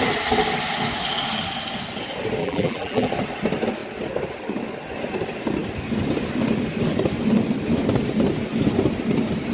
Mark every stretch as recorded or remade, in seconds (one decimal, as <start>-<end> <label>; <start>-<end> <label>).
0.0-2.4 recorded; 2.4-3.1 remade; 3.1-9.5 recorded